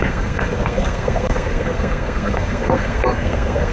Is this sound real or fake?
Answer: fake